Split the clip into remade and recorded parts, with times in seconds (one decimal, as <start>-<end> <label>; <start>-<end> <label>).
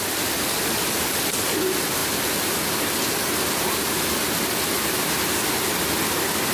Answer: 0.0-6.5 recorded